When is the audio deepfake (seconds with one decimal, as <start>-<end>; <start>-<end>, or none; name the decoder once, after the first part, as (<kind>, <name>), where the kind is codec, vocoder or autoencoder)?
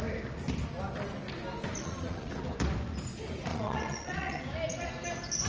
1.8-2.3 (vocoder, Vocos); 3.5-4.4